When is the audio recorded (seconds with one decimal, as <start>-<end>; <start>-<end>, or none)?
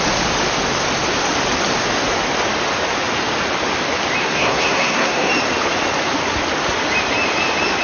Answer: 0.0-4.2; 5.3-7.8